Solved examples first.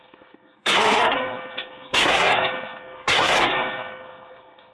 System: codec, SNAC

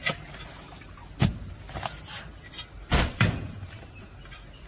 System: none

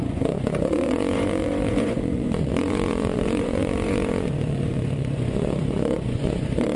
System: vocoder, Vocos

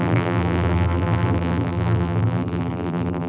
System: vocoder, BigVGAN v2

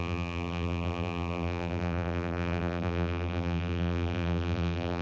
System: vocoder, BigVGAN v2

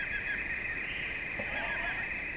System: none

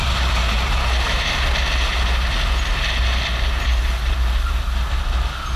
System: none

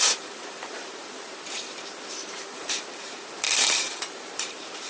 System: vocoder, BigVGAN v2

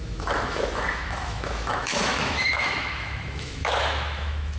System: autoencoder, DAC-VAE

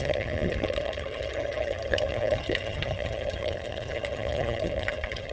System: vocoder, HiFi-GAN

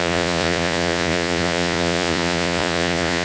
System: vocoder, Vocos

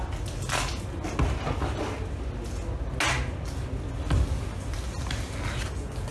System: none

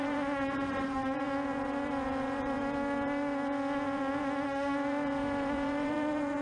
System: vocoder, Vocos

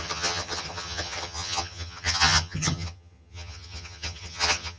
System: vocoder, HiFi-GAN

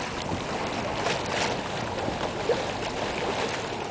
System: none